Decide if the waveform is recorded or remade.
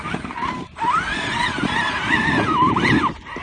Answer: remade